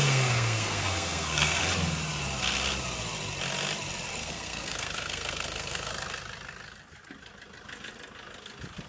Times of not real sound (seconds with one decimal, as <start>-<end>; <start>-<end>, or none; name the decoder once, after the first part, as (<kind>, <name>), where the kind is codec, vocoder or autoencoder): 0.0-1.6 (codec, SNAC); 4.2-5.9